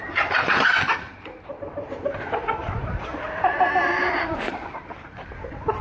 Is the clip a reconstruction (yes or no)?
yes